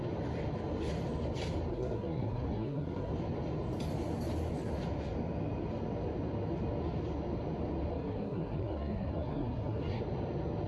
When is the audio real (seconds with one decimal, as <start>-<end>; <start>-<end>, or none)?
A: 0.0-1.7; 3.1-7.9; 10.0-10.7